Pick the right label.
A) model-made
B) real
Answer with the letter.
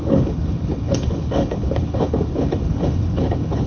A